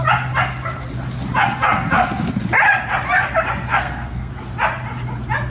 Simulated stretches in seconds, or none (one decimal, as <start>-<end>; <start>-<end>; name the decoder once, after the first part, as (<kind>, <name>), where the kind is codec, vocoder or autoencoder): 3.7-4.3 (codec, SNAC)